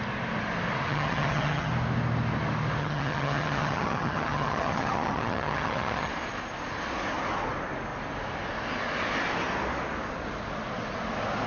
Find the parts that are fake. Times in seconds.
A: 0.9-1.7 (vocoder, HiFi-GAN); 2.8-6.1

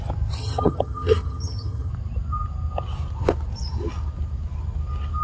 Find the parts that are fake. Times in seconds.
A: 0.4-1.9 (vocoder, HiFi-GAN)

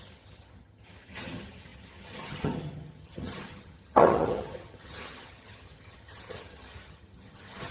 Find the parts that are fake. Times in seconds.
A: 0.0-7.7 (vocoder, HiFi-GAN)

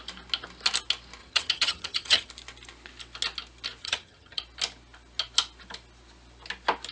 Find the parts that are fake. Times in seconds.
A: 1.2-2.3 (vocoder, HiFi-GAN); 3.8-4.4